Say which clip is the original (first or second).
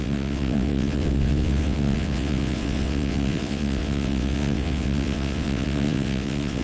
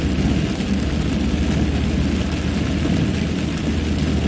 second